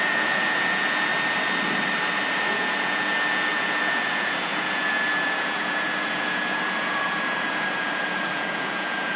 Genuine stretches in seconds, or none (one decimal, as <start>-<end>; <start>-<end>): 1.1-2.5